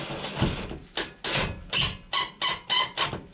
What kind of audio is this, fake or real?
real